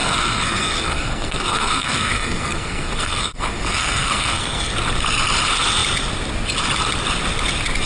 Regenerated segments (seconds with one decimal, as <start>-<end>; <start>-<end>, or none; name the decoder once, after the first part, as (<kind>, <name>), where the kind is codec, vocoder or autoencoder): 0.0-4.7 (codec, SNAC)